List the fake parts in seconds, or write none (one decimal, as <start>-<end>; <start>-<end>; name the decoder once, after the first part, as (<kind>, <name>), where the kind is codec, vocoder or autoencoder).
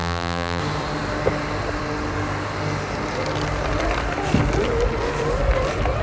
0.0-0.6 (vocoder, BigVGAN v2)